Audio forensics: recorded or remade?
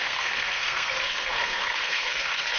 remade